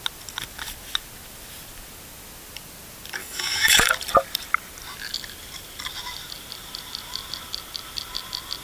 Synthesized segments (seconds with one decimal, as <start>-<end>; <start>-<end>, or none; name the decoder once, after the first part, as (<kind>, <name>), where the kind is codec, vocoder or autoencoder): 3.2-3.9 (autoencoder, DAC-VAE)